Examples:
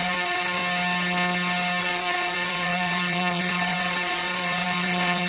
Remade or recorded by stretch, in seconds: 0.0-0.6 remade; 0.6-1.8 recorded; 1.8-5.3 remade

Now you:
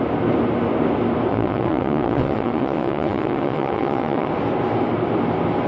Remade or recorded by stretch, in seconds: 0.0-1.3 recorded; 1.3-4.3 remade; 4.3-5.7 recorded

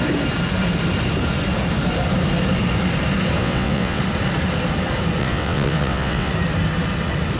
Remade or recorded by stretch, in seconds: 0.0-3.4 recorded; 3.4-4.0 remade; 4.0-5.2 recorded; 5.2-6.3 remade; 6.3-7.4 recorded

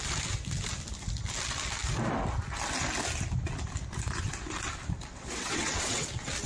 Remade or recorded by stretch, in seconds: 0.0-5.1 recorded; 5.1-6.1 remade; 6.1-6.5 recorded

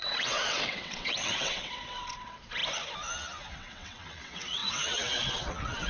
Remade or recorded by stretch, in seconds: 0.0-2.6 remade; 2.6-3.5 recorded; 3.5-5.9 remade

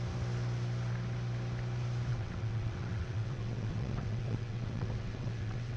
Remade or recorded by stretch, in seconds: 0.0-2.1 recorded; 2.1-5.8 remade